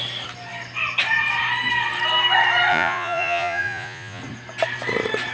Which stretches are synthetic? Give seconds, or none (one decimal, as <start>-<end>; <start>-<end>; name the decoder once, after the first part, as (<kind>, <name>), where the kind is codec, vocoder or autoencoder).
2.7-4.2 (vocoder, Vocos)